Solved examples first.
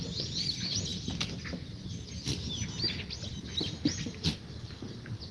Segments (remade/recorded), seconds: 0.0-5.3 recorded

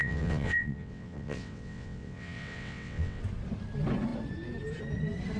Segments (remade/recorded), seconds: 0.0-3.2 remade; 3.2-5.4 recorded

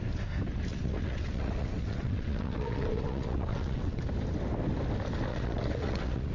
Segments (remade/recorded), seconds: 0.0-0.7 recorded; 0.7-4.0 remade; 4.0-5.3 recorded; 5.3-6.3 remade

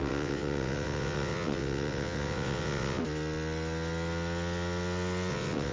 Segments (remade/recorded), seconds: 0.0-3.0 remade; 3.0-5.3 recorded; 5.3-5.7 remade

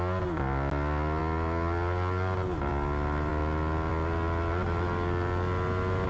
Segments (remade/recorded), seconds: 0.0-6.1 recorded